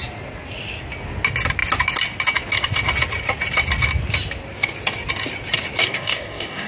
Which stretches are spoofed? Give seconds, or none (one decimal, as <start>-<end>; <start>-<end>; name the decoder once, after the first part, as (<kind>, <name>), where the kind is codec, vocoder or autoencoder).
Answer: 5.8-6.7 (codec, DAC)